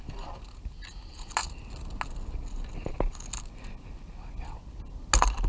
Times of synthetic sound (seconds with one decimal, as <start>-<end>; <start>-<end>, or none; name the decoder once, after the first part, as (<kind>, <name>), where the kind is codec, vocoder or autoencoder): none